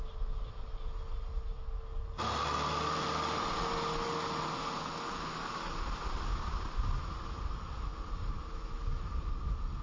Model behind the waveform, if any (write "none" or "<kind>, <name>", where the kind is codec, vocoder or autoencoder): none